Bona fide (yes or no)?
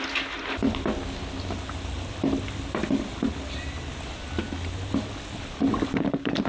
yes